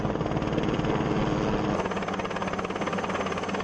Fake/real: real